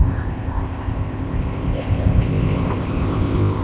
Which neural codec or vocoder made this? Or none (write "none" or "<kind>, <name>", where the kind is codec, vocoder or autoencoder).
codec, ZipCodec